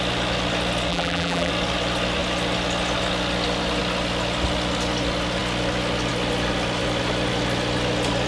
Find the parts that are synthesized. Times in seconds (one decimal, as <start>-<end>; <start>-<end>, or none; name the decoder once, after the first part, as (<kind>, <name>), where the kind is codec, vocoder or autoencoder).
0.9-1.5 (vocoder, BigVGAN v2)